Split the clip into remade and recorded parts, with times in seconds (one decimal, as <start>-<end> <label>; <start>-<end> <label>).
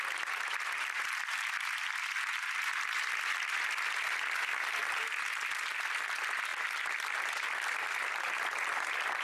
0.0-6.5 recorded; 6.5-8.2 remade; 8.2-9.2 recorded